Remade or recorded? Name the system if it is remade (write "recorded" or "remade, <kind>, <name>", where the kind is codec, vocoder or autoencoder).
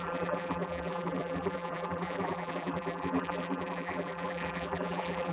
remade, vocoder, BigVGAN v2